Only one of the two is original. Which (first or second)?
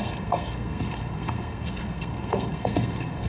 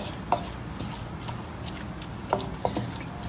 second